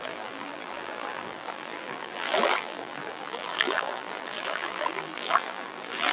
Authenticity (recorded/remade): remade